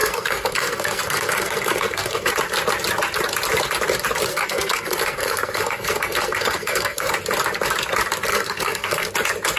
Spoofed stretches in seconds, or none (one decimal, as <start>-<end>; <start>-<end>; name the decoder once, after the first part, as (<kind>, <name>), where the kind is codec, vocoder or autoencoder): 0.0-2.3 (codec, SNAC); 4.3-7.1; 8.3-9.1